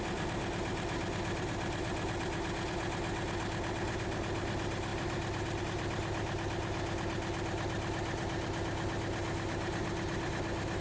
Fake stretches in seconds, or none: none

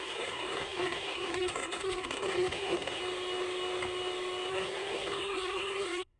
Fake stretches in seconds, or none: 0.0-3.0; 4.5-6.2

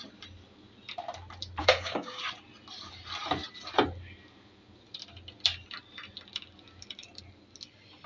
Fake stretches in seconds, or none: 1.6-2.2

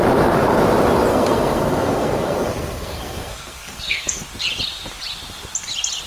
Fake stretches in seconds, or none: 1.1-4.2

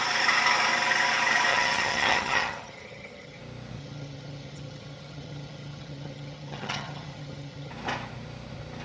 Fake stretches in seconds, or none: 1.5-3.4; 3.8-7.7

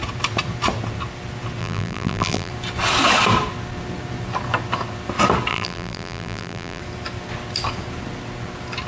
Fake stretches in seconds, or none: 1.6-2.5; 5.5-6.8

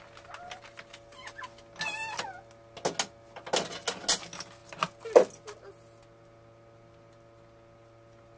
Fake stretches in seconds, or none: none